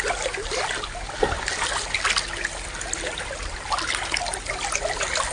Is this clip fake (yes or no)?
no